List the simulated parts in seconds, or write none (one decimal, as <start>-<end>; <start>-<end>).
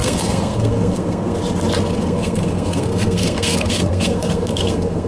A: 0.0-1.4; 2.0-5.1